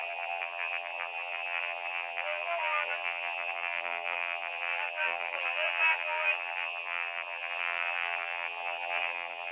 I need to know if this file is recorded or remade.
remade